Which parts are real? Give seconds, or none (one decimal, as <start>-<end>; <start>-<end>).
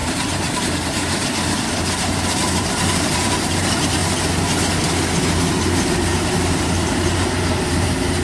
4.0-6.6